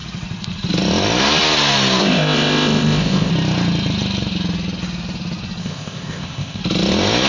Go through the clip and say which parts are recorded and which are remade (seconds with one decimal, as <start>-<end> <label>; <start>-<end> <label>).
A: 0.0-2.0 recorded; 2.0-3.3 remade; 3.3-5.6 recorded; 5.6-6.6 remade; 6.6-7.3 recorded